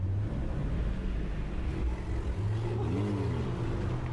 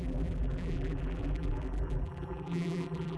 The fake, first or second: second